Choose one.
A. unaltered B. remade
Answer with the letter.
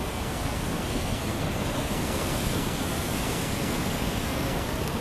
B